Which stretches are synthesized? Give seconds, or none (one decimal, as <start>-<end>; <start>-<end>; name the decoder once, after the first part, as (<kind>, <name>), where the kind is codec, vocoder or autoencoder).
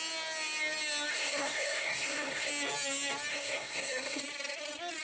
1.1-2.5 (codec, SNAC); 3.3-4.2